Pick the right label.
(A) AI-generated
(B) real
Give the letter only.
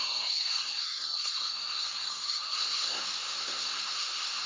A